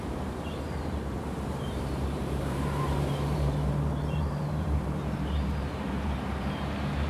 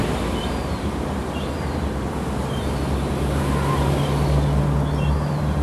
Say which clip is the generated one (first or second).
first